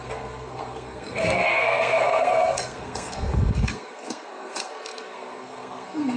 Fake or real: fake